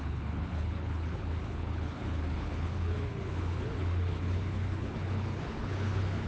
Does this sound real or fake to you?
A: fake